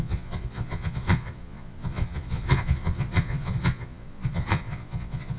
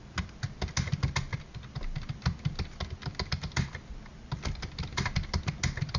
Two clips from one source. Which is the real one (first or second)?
second